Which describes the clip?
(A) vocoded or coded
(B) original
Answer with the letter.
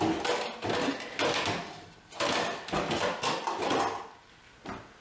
B